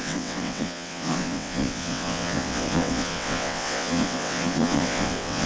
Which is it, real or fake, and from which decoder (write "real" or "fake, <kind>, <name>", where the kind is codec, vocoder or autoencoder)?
fake, vocoder, WaveNeXt